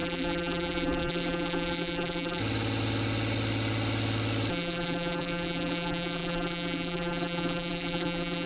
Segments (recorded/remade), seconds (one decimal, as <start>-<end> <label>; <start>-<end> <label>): 0.0-2.4 remade; 2.4-4.5 recorded; 4.5-8.5 remade